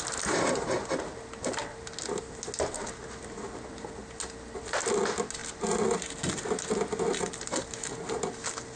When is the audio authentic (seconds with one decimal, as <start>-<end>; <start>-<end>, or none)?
0.0-8.8